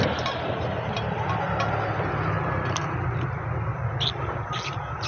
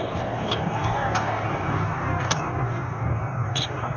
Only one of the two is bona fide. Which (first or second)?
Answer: first